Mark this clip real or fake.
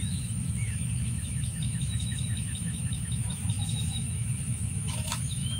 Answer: fake